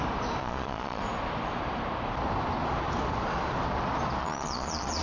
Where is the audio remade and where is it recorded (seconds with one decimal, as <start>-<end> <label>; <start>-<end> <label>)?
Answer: 0.0-0.4 recorded; 0.4-1.0 remade; 1.0-4.2 recorded; 4.2-5.0 remade